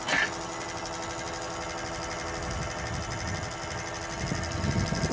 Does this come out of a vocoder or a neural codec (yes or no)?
no